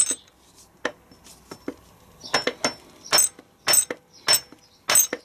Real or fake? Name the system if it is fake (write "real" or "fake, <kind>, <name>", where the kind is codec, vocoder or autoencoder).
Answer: real